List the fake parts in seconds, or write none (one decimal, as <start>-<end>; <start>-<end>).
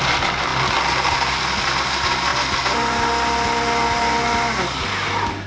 none